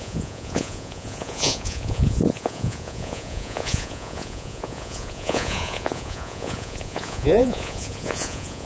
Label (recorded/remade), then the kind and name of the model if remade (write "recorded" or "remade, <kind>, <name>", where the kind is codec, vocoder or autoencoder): remade, vocoder, Vocos